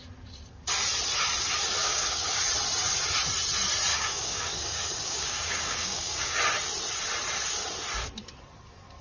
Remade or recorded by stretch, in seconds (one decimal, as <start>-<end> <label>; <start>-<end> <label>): 0.0-1.8 recorded; 1.8-2.4 remade; 2.4-3.9 recorded; 3.9-6.4 remade; 6.4-9.0 recorded